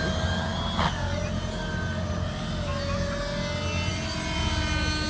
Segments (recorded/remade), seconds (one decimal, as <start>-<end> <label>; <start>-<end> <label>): 0.0-5.1 recorded